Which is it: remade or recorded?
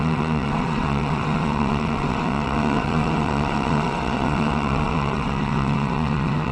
remade